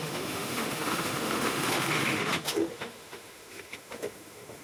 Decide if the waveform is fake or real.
fake